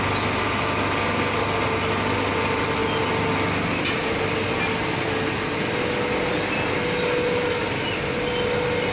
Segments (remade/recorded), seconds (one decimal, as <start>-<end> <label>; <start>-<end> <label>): 0.0-8.9 recorded

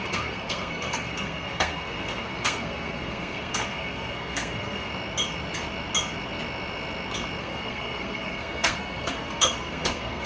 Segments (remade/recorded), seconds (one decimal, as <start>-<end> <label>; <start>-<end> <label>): 0.0-4.9 remade; 4.9-7.4 recorded; 7.4-10.3 remade

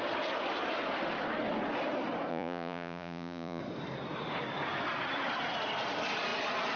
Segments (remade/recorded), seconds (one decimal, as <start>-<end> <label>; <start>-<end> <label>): 0.0-2.3 recorded; 2.3-3.6 remade; 3.6-6.8 recorded

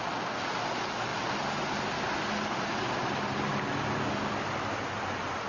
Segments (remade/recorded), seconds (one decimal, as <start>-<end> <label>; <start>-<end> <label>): 0.0-5.5 recorded

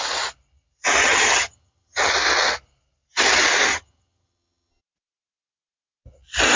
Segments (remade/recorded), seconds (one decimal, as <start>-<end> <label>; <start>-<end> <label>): 0.0-1.0 recorded; 1.0-2.1 remade; 2.1-3.7 recorded; 3.7-4.8 remade; 4.8-6.6 recorded

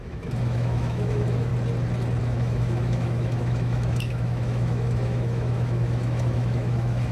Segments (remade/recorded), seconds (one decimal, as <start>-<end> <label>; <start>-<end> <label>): 0.0-1.5 remade; 1.5-2.2 recorded; 2.2-7.1 remade